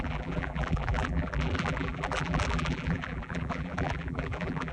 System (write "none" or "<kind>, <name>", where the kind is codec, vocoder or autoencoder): vocoder, BigVGAN v2